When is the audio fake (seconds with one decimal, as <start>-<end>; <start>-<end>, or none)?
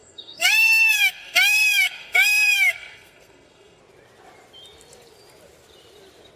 0.0-3.8